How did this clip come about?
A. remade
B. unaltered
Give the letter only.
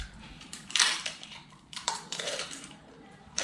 A